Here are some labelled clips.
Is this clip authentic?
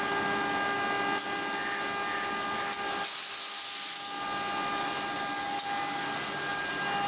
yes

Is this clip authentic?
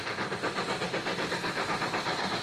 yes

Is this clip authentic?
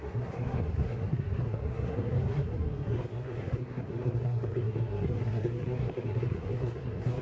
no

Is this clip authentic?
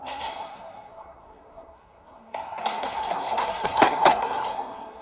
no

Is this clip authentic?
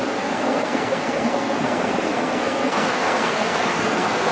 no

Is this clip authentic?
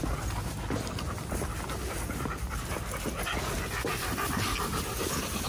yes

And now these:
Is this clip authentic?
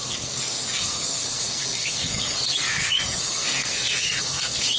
no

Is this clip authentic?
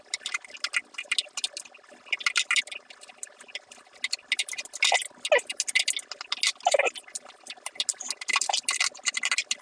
yes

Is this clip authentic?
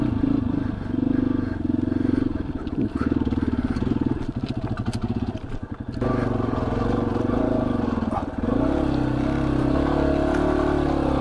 yes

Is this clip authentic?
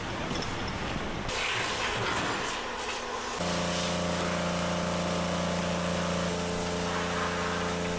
yes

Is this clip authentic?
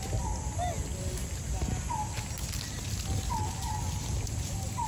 yes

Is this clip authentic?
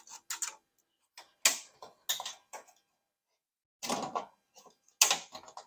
yes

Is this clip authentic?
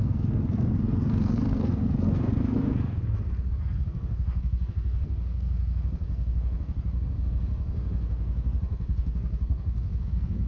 no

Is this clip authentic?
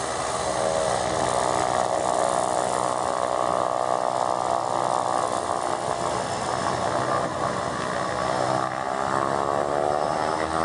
yes